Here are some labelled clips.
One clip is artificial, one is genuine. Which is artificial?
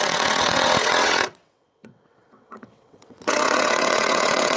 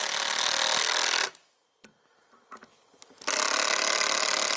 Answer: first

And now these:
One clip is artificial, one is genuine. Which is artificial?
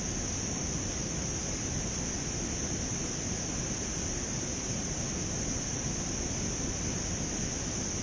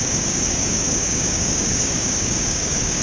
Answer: second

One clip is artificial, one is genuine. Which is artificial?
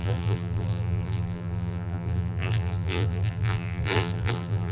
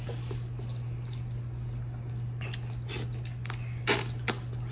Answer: first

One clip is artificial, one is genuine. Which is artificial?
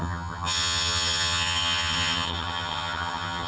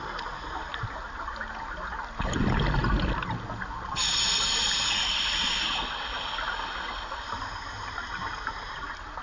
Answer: first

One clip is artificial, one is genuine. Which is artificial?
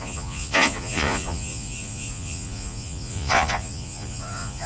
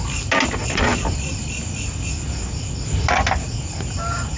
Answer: first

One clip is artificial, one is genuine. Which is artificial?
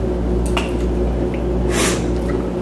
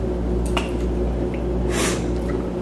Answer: second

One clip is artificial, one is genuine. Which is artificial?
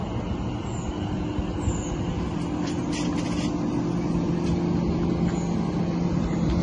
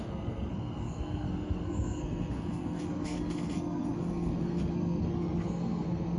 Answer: second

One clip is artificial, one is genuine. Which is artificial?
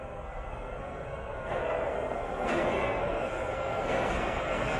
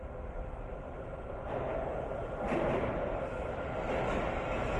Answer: first